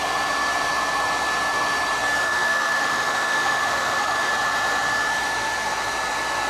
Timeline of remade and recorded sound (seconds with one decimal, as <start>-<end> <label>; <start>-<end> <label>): 0.0-2.2 recorded; 2.2-4.3 remade; 4.3-6.5 recorded